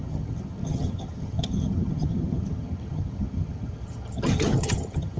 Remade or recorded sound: remade